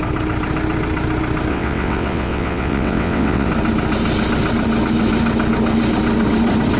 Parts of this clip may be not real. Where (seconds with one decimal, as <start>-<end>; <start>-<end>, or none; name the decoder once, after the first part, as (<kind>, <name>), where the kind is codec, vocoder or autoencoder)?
1.5-3.5 (vocoder, WaveNeXt)